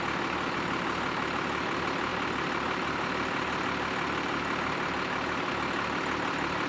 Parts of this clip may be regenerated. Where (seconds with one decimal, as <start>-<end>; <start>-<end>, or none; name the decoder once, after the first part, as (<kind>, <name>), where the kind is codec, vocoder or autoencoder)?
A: none